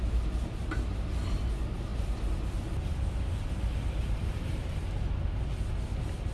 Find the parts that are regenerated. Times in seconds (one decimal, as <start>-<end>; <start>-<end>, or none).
0.6-1.5; 4.2-4.8